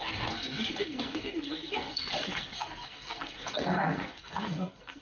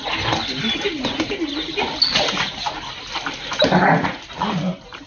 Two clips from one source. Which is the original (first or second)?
second